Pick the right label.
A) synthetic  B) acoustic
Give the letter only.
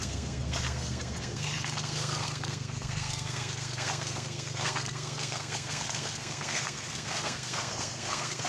A